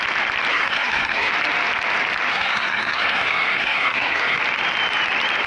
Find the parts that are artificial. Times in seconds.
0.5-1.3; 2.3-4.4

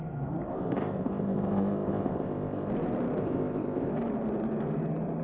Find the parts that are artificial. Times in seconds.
0.5-2.7; 3.2-3.9